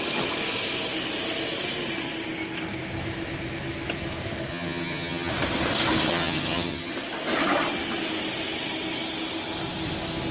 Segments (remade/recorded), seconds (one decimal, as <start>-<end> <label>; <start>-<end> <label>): 0.0-4.5 recorded; 4.5-5.3 remade; 5.3-6.1 recorded; 6.1-6.9 remade; 6.9-10.3 recorded